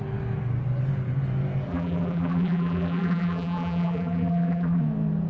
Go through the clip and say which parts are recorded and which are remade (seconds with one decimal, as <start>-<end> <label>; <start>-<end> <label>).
0.0-1.7 recorded; 1.7-4.8 remade; 4.8-5.3 recorded